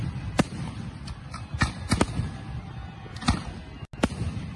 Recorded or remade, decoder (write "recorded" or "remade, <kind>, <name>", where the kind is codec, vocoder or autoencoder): recorded